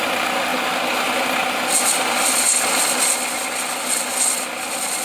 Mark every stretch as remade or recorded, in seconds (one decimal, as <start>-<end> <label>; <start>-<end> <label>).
0.0-5.0 recorded